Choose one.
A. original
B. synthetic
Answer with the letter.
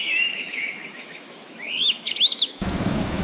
B